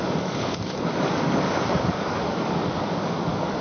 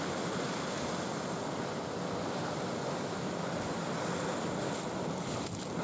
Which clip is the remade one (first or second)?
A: first